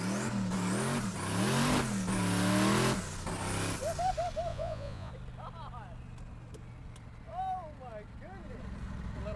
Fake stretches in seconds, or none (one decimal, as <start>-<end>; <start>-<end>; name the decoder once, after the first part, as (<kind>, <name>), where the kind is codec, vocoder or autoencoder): 4.5-5.1 (vocoder, Vocos)